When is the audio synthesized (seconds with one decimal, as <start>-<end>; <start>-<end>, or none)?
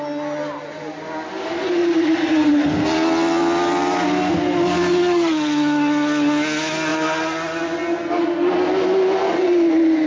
1.8-2.5